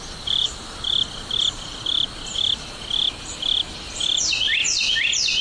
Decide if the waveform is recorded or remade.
remade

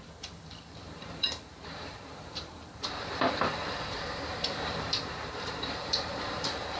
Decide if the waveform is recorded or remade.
remade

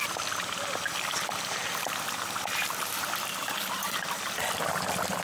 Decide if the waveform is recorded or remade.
remade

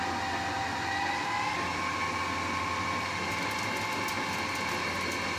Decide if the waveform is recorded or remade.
recorded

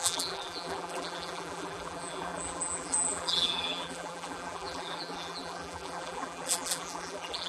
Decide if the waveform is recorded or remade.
remade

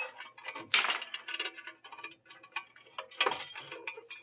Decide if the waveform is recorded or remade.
recorded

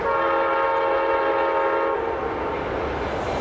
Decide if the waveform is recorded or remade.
recorded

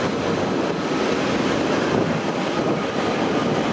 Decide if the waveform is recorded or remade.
recorded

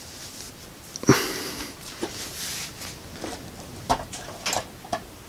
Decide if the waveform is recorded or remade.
recorded